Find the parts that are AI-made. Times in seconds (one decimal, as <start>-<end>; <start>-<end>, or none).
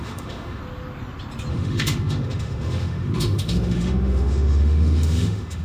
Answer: 0.0-0.6; 1.5-5.6